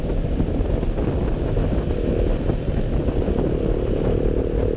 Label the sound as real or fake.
real